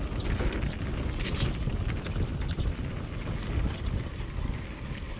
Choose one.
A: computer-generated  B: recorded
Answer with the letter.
B